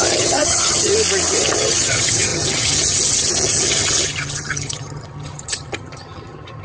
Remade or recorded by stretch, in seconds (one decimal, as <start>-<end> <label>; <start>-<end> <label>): 0.0-0.9 remade; 0.9-1.4 recorded; 1.4-6.6 remade